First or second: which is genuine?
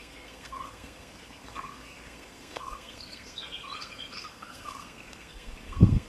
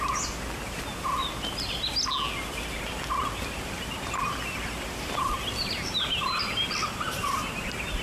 second